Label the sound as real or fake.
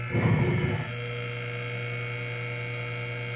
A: real